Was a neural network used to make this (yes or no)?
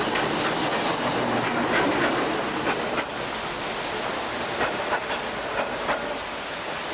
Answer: no